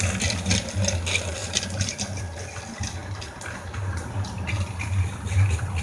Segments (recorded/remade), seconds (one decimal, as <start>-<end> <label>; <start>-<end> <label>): 0.0-1.4 recorded; 1.4-2.2 remade; 2.2-5.8 recorded